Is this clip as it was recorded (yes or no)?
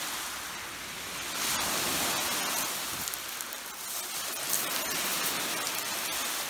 yes